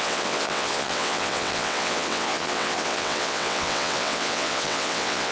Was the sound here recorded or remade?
remade